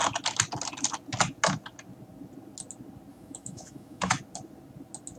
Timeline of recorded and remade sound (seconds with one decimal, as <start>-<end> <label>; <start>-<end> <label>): 0.0-3.1 recorded; 3.1-4.2 remade; 4.2-5.2 recorded